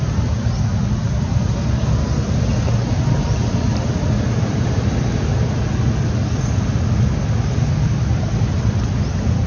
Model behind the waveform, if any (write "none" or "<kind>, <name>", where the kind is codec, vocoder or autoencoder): none